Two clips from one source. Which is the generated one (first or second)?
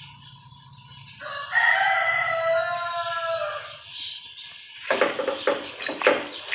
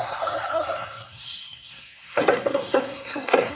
second